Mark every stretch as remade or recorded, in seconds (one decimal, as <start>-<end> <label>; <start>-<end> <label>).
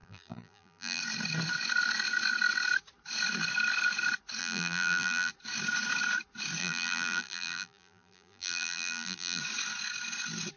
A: 0.0-1.0 remade; 1.0-4.4 recorded; 4.4-5.3 remade; 5.3-6.6 recorded; 6.6-9.4 remade; 9.4-10.6 recorded